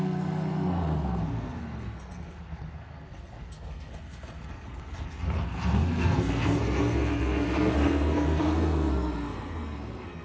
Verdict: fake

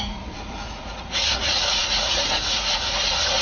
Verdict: fake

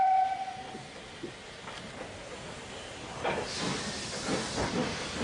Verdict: real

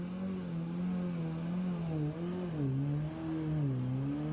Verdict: real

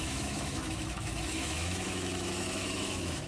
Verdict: fake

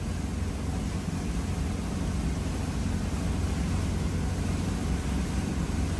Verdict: real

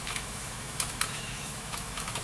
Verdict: fake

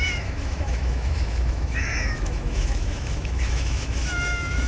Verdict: fake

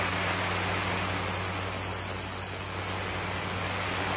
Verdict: real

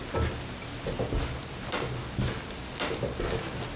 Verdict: real